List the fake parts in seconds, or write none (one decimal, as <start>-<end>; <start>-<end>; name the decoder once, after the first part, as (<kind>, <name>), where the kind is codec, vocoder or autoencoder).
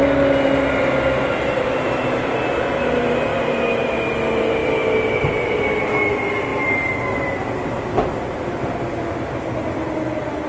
none